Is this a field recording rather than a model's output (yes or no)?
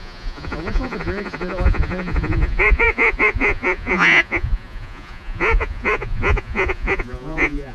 no